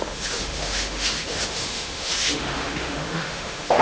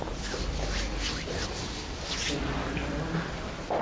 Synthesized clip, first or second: first